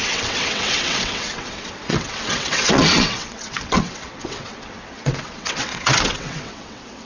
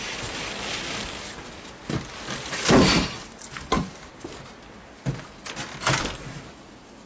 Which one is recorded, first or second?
second